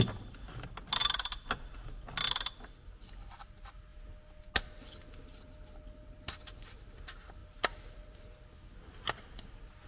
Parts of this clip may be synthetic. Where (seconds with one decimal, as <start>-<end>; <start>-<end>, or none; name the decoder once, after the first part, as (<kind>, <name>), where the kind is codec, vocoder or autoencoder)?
7.4-8.2 (vocoder, BigVGAN v2)